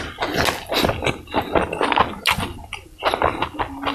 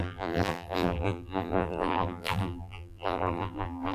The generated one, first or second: second